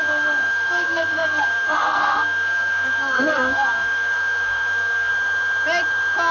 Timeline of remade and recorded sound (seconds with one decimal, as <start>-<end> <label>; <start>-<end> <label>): 0.0-5.1 remade; 5.1-6.3 recorded